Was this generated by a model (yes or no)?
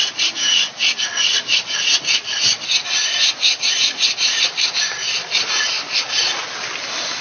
no